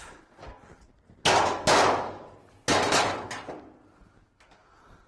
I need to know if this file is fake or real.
real